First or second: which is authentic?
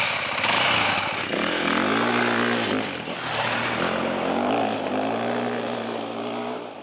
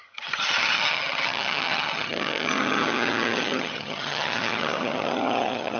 first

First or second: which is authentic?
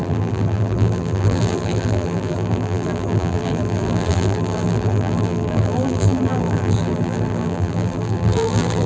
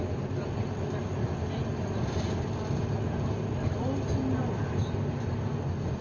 second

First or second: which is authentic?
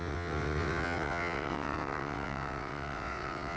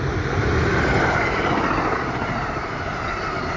second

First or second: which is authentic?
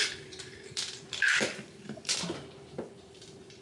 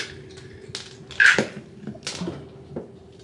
second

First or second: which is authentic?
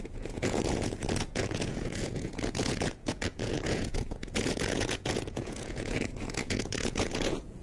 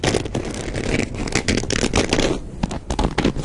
second